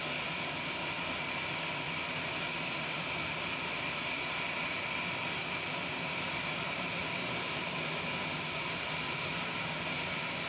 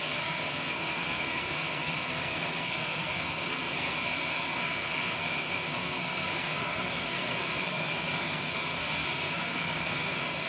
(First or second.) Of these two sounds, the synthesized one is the second